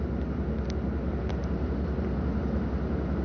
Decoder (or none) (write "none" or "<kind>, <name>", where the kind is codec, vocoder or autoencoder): none